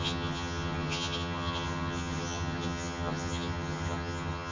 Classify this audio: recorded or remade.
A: remade